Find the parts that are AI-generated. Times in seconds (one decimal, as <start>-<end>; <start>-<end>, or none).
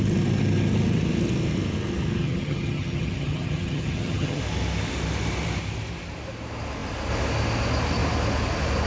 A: 2.2-4.4